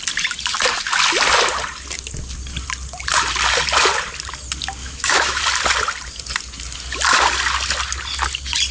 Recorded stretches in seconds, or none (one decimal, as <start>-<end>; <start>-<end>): 0.0-4.8; 5.4-8.7